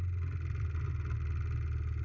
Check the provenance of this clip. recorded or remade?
recorded